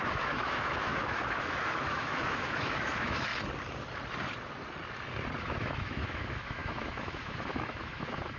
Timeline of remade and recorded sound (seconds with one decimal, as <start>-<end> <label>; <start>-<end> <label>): 0.0-3.3 remade; 3.3-5.4 recorded; 5.4-8.4 remade